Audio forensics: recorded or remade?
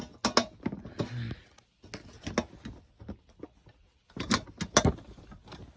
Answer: recorded